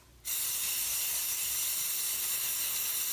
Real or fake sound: real